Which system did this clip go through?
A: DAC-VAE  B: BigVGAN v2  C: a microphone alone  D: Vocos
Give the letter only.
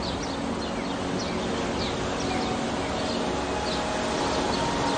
C